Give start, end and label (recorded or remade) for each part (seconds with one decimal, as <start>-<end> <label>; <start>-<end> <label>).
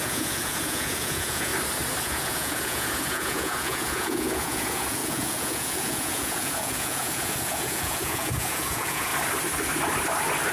0.0-1.5 remade; 1.5-2.0 recorded; 2.0-9.1 remade; 9.1-10.5 recorded